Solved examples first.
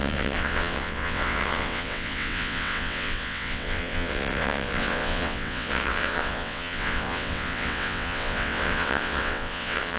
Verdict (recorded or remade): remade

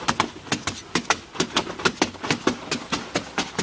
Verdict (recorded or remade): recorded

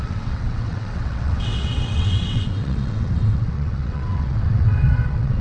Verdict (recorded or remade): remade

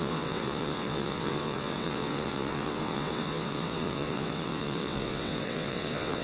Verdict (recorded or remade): remade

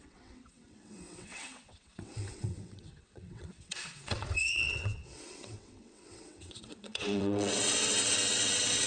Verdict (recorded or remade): remade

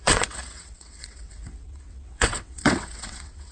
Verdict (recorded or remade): remade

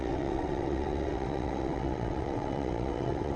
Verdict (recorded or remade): remade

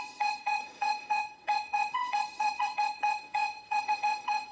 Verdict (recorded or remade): remade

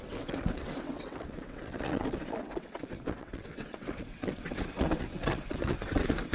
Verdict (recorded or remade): remade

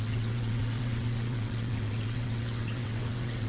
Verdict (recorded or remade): remade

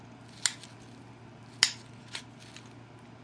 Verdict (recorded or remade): recorded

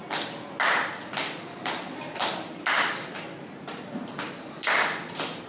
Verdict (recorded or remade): recorded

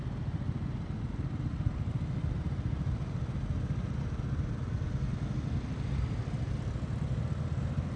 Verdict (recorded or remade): recorded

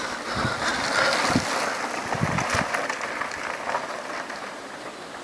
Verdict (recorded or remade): recorded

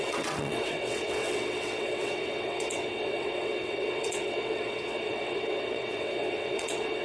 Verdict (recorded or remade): remade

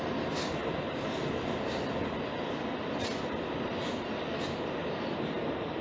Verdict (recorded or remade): recorded